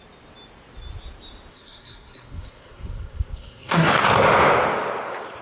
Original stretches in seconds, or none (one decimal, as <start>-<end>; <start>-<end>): 0.0-1.5; 3.9-5.4